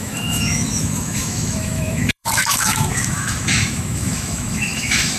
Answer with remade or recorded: remade